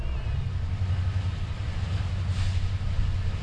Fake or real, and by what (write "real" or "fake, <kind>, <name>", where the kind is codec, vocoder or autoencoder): real